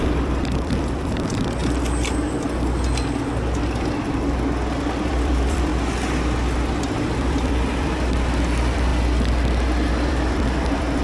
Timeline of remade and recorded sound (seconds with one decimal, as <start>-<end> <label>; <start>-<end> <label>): 0.0-1.6 remade; 1.6-4.7 recorded; 4.7-5.7 remade; 5.7-6.8 recorded; 6.8-8.9 remade; 8.9-9.9 recorded; 9.9-11.0 remade

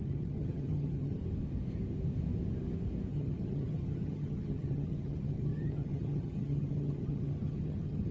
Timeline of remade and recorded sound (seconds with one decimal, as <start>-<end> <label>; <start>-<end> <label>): 0.0-1.2 remade; 1.2-3.1 recorded; 3.1-8.1 remade

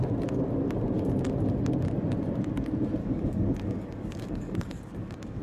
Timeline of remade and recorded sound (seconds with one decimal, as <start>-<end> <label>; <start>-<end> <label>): 0.0-3.0 recorded; 3.0-5.4 remade

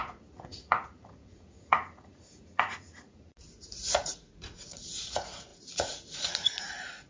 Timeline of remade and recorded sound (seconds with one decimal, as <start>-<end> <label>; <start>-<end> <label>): 0.0-7.1 remade